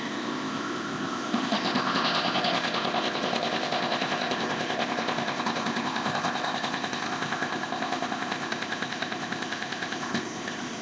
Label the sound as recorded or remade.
remade